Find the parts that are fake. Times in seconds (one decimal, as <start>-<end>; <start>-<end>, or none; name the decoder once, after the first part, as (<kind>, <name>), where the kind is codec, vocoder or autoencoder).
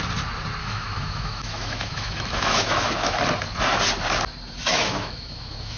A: 0.6-3.2 (autoencoder, DAC-VAE); 4.7-5.8